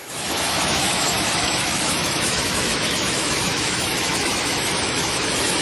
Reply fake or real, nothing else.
fake